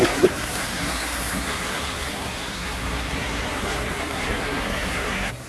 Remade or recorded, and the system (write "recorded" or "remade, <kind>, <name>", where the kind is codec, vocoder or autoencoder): remade, codec, SNAC